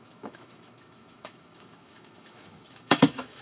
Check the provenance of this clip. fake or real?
fake